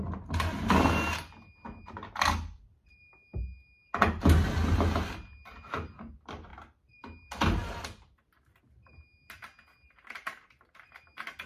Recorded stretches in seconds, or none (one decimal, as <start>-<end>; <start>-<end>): 0.0-11.5